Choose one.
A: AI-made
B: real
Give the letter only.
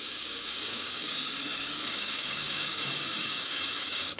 A